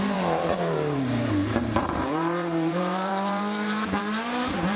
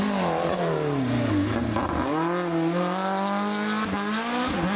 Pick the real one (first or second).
second